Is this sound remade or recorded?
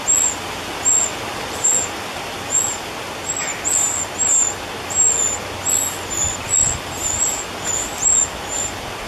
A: recorded